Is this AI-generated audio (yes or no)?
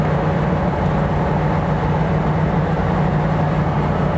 no